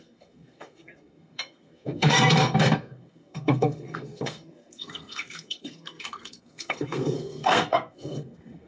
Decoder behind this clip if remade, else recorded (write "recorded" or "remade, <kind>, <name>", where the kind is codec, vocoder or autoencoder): remade, codec, SNAC